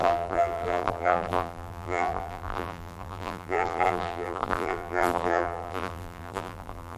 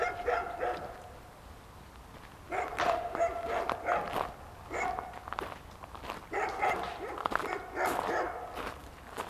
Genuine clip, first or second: second